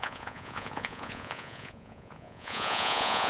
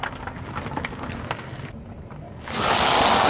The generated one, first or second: first